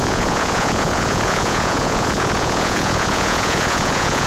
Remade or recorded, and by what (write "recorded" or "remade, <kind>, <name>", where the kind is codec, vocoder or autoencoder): remade, vocoder, Vocos